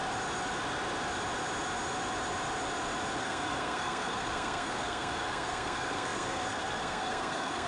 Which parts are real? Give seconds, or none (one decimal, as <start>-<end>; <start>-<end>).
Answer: 0.0-3.2